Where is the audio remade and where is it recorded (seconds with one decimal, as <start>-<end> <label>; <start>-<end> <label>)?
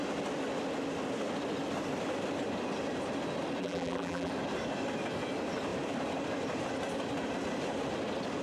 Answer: 0.0-3.6 recorded; 3.6-4.3 remade; 4.3-8.4 recorded